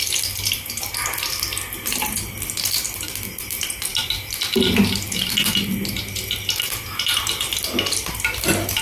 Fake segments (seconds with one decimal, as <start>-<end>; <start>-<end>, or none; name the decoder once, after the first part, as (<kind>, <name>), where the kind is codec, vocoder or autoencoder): none